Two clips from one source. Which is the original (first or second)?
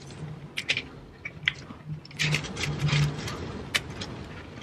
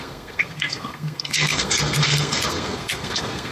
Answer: first